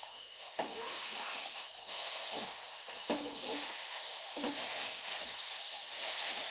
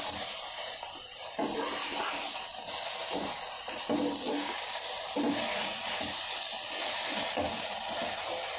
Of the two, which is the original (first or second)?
second